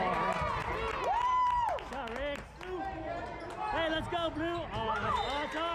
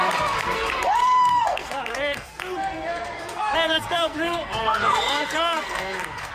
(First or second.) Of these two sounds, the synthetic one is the second